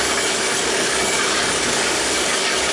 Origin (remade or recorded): remade